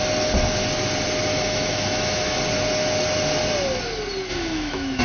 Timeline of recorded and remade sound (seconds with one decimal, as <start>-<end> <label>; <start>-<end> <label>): 0.0-1.3 recorded; 1.3-2.4 remade; 2.4-4.3 recorded; 4.3-5.0 remade